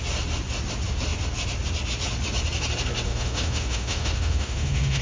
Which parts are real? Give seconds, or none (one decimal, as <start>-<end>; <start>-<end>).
0.0-3.1